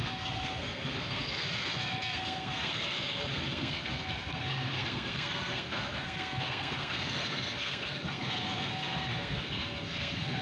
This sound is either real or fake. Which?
fake